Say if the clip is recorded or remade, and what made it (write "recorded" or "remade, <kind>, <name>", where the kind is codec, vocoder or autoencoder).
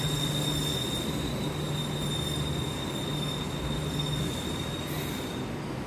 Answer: recorded